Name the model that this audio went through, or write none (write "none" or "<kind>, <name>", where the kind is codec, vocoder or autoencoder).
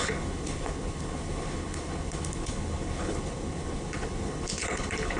codec, HILCodec